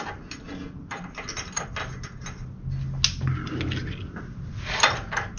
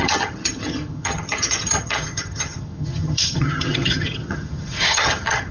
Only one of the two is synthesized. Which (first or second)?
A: second